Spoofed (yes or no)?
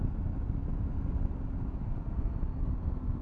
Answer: no